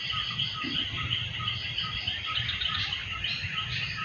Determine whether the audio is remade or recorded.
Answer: recorded